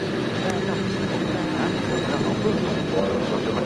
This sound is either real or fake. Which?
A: real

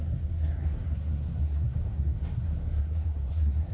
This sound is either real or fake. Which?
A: fake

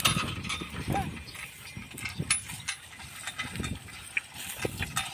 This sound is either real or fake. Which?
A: real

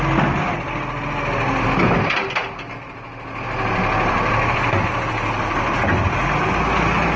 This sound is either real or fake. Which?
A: real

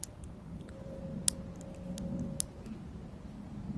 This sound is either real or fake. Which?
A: real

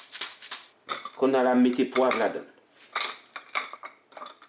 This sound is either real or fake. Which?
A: real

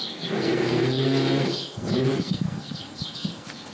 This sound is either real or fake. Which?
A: fake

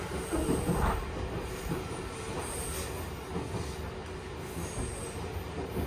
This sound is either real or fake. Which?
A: real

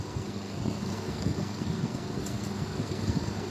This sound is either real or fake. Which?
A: fake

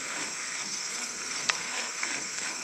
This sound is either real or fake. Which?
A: fake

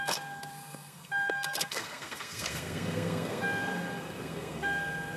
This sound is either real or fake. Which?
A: fake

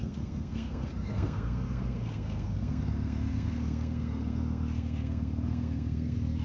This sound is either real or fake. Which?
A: fake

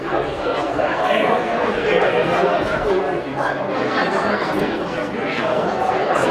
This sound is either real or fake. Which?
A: fake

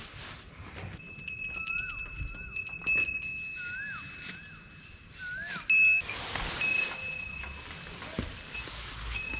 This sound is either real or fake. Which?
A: real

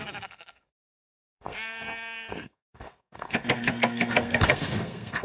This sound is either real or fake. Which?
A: fake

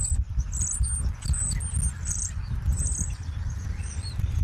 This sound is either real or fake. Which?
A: real